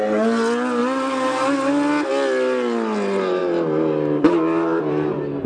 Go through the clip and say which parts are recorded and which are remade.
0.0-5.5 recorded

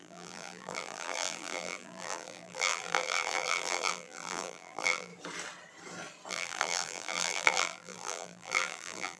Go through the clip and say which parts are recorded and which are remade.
0.0-5.1 remade; 5.1-6.3 recorded; 6.3-9.2 remade

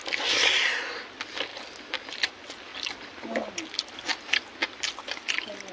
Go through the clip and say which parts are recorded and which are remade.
0.0-1.5 recorded; 1.5-2.1 remade; 2.1-2.7 recorded; 2.7-3.3 remade; 3.3-4.6 recorded; 4.6-5.2 remade; 5.2-5.7 recorded

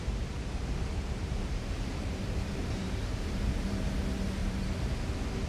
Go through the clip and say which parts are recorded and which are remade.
0.0-0.6 recorded; 0.6-3.9 remade; 3.9-4.4 recorded; 4.4-4.9 remade; 4.9-5.5 recorded

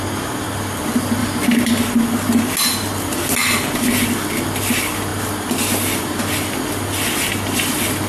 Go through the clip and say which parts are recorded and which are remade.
0.0-1.2 recorded; 1.2-1.7 remade; 1.7-8.1 recorded

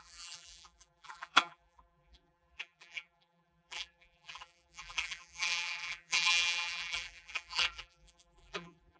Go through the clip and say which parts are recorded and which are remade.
0.0-9.0 remade

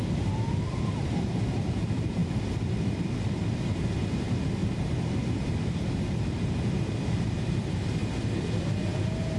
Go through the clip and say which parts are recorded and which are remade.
0.0-2.2 remade; 2.2-4.0 recorded; 4.0-8.0 remade; 8.0-8.6 recorded; 8.6-9.4 remade

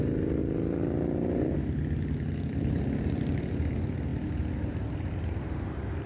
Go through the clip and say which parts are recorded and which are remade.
0.0-0.4 remade; 0.4-2.5 recorded; 2.5-6.1 remade